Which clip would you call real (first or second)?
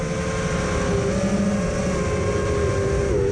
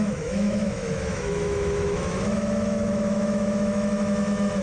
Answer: first